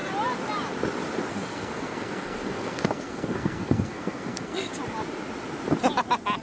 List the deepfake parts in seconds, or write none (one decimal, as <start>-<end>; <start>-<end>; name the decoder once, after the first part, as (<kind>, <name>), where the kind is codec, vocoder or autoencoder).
1.3-4.7 (codec, SNAC)